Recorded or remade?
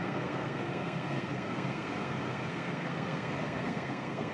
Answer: remade